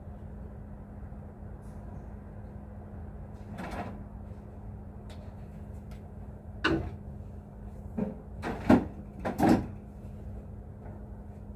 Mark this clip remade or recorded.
recorded